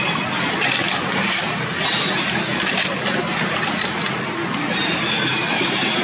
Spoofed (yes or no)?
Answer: no